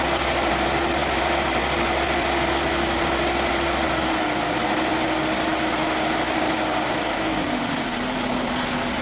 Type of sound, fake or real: real